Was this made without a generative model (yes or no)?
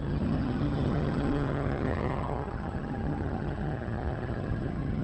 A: no